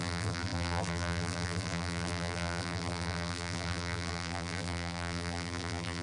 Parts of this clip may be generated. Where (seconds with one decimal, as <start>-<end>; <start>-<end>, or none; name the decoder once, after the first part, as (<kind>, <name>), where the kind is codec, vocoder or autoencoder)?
0.0-6.0 (vocoder, BigVGAN v2)